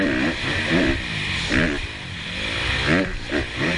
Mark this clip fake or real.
real